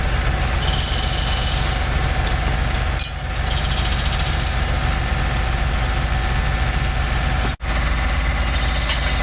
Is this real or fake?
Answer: real